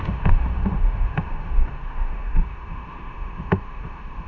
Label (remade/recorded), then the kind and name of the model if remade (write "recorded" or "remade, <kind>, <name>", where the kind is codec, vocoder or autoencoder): remade, autoencoder, DAC-VAE